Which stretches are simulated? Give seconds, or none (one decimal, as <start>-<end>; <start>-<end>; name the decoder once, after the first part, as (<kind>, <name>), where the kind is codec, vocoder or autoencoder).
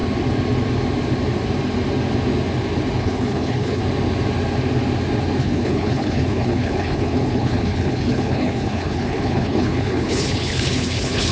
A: 3.0-3.8 (codec, HILCodec); 5.4-11.3